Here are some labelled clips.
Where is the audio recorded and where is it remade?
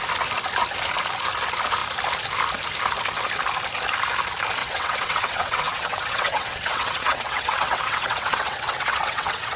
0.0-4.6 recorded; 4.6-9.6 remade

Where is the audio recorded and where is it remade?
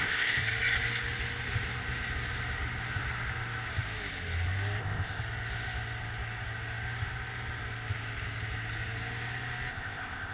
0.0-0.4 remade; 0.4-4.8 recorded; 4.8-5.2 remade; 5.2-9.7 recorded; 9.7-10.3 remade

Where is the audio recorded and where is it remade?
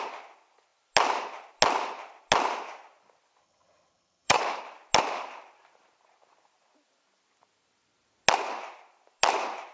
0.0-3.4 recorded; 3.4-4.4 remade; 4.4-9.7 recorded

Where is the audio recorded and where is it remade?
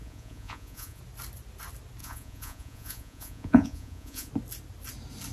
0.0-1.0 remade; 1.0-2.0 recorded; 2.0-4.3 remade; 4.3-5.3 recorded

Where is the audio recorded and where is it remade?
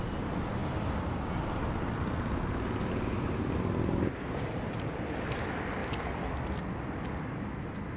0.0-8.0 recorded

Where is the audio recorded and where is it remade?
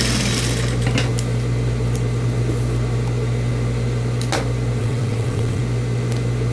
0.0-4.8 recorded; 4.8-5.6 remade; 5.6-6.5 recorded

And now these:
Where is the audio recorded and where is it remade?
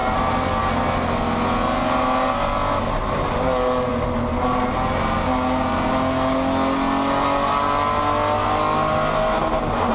0.0-9.9 recorded